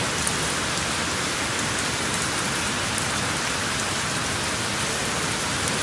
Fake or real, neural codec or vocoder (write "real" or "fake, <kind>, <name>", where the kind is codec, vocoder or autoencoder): real